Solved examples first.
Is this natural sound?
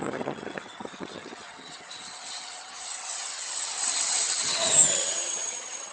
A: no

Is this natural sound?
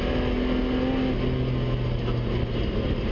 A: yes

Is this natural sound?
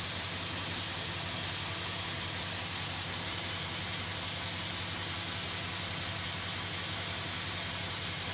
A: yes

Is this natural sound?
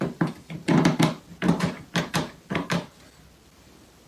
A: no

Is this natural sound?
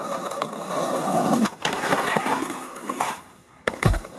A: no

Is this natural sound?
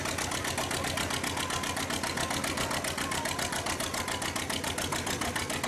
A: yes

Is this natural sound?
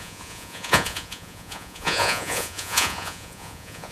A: no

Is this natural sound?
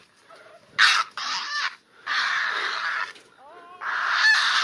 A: yes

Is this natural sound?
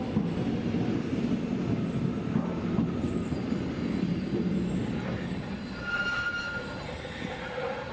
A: yes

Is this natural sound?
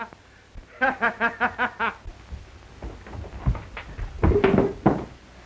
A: yes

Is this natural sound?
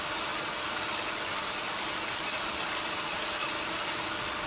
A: yes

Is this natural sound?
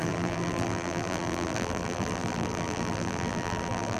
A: no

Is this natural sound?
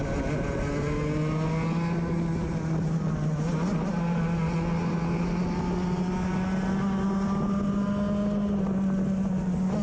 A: yes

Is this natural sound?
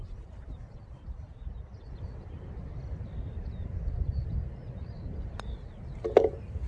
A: yes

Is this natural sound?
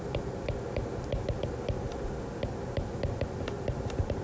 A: yes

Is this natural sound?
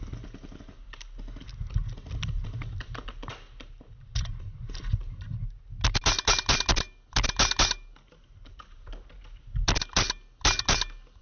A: yes